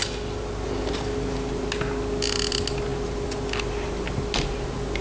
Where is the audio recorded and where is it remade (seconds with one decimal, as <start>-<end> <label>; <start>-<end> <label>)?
0.0-5.0 recorded